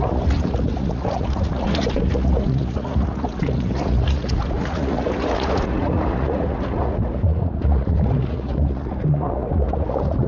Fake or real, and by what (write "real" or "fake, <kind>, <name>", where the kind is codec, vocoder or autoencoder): fake, vocoder, Vocos